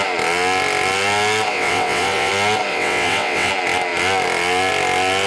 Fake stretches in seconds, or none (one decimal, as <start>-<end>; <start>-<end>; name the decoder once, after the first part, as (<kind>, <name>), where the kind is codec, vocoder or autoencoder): 1.5-2.3 (vocoder, WaveNeXt); 2.7-3.5